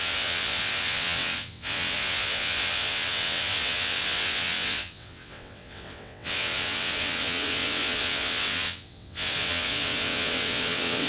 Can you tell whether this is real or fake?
fake